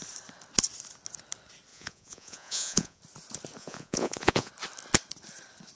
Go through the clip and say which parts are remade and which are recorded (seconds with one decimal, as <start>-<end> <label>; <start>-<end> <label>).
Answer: 0.0-1.7 recorded; 1.7-3.0 remade; 3.0-3.6 recorded; 3.6-4.5 remade; 4.5-5.8 recorded